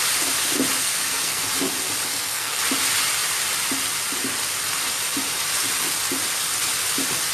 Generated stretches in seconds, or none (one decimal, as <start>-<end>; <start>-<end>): 0.8-1.5; 2.1-2.6